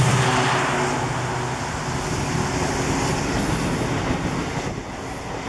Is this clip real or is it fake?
real